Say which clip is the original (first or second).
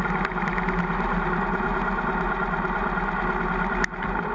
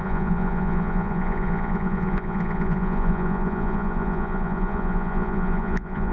first